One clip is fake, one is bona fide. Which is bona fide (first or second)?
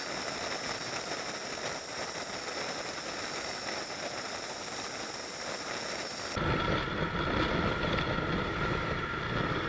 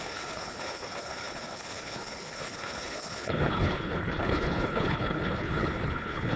first